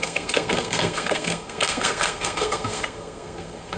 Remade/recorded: remade